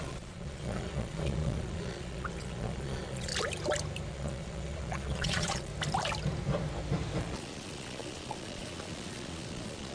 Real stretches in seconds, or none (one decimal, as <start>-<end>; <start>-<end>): 3.3-4.1; 5.7-7.2